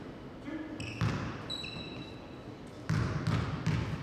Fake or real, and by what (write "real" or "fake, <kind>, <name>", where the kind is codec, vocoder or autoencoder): real